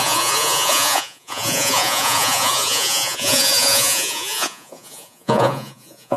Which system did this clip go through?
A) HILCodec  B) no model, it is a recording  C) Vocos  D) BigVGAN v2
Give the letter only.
C